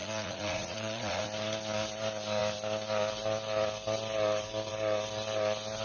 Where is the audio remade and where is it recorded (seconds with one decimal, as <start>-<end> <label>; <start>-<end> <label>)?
0.0-1.2 remade; 1.2-5.8 recorded